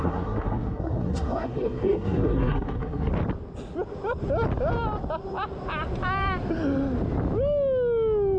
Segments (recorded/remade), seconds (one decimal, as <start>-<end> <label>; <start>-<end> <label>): 0.0-3.1 remade; 3.1-8.4 recorded